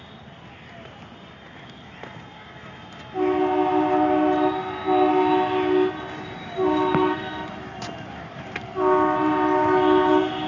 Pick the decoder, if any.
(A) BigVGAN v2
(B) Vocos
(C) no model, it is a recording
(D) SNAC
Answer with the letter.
C